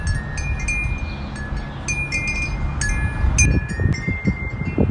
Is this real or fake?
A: real